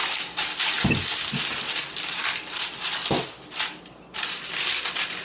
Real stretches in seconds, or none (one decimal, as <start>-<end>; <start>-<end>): 0.0-5.2